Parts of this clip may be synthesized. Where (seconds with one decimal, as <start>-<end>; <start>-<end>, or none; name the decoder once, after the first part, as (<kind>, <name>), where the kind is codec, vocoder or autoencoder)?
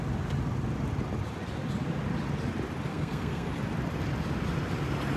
2.9-3.5 (codec, SNAC)